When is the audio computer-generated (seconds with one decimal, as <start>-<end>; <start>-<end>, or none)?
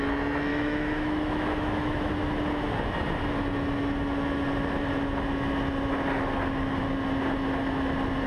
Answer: 0.5-2.1